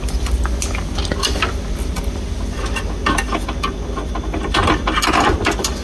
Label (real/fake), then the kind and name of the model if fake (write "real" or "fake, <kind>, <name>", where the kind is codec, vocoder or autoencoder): real